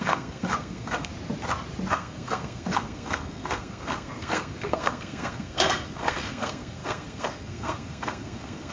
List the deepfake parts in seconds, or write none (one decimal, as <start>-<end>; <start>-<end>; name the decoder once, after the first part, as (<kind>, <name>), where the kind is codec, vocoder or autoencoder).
0.0-1.1 (codec, SNAC); 1.9-8.7